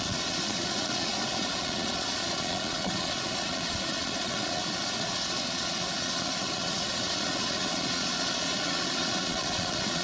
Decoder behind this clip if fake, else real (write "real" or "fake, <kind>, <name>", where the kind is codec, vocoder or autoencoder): fake, vocoder, Vocos